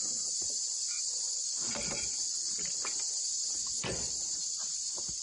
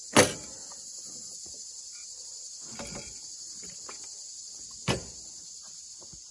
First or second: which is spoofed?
first